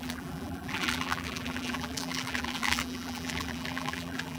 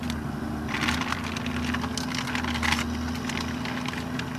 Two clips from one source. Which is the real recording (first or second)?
second